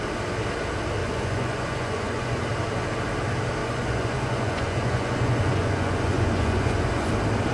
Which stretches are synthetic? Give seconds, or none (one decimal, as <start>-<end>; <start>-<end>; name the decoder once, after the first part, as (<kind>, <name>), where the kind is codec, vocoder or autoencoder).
1.0-2.4 (vocoder, Vocos); 3.6-7.1